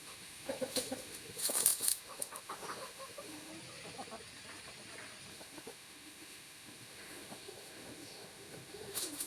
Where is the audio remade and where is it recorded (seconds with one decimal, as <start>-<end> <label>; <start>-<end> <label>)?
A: 0.0-3.5 remade; 3.5-5.3 recorded; 5.3-9.3 remade